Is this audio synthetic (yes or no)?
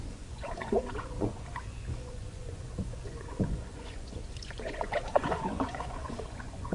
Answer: yes